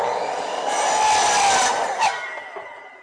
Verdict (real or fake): real